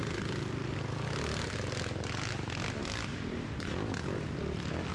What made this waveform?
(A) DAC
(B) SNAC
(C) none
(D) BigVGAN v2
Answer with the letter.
C